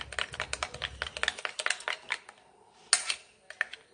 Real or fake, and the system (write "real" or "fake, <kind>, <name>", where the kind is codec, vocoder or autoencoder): real